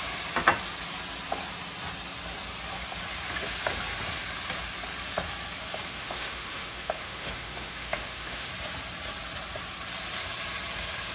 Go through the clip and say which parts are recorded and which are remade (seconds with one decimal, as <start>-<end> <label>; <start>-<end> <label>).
0.0-5.9 recorded; 5.9-8.5 remade; 8.5-11.1 recorded